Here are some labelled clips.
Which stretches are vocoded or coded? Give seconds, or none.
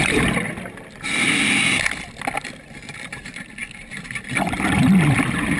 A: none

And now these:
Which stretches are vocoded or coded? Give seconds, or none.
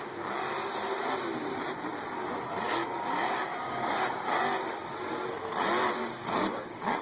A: 2.8-4.4 (codec, DAC); 6.2-7.0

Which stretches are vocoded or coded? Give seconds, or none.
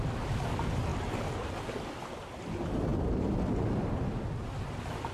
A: 0.9-2.4 (vocoder, BigVGAN v2); 2.9-4.2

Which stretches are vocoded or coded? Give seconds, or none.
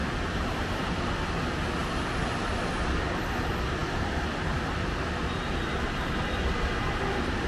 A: 0.0-1.1 (vocoder, BigVGAN v2); 1.8-2.5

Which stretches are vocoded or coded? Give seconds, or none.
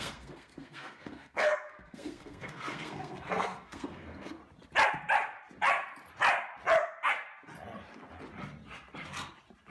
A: 0.0-4.4 (codec, SNAC)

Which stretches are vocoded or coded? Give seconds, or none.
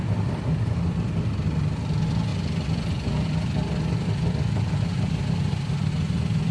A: none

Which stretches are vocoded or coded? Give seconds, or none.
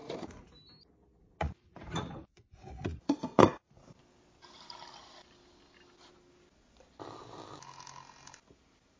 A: 0.0-0.5 (vocoder, Vocos); 1.2-3.8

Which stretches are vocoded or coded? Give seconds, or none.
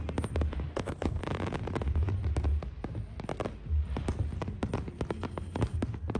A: 0.7-1.2 (codec, DAC)